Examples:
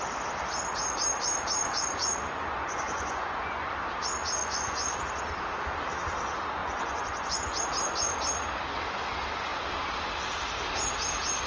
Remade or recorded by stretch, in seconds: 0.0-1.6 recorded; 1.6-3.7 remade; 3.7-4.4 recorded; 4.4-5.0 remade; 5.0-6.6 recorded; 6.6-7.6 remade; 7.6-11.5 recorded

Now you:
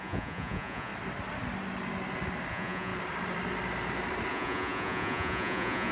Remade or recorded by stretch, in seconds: 0.0-0.9 remade; 0.9-2.5 recorded; 2.5-2.9 remade; 2.9-4.3 recorded; 4.3-5.9 remade

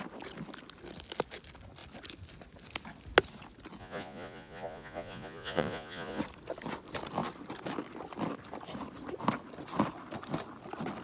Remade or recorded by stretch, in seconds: 0.0-3.8 recorded; 3.8-6.2 remade; 6.2-11.0 recorded

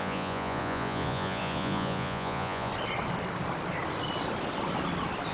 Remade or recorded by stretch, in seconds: 0.0-2.7 remade; 2.7-5.3 recorded

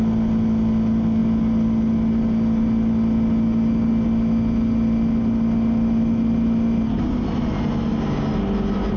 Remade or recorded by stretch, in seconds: 0.0-9.0 recorded

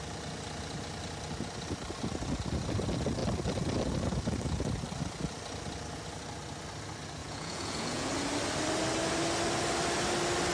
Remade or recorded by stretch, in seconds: 0.0-7.2 recorded; 7.2-8.1 remade; 8.1-10.5 recorded

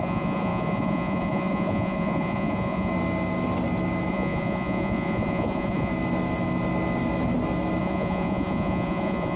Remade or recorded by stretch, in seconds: 0.0-2.9 remade; 2.9-4.1 recorded; 4.1-5.9 remade; 5.9-7.8 recorded; 7.8-9.4 remade